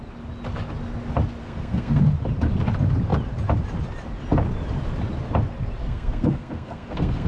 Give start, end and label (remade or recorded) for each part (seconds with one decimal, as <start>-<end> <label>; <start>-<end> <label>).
0.0-1.4 recorded; 1.4-2.0 remade; 2.0-5.8 recorded; 5.8-7.3 remade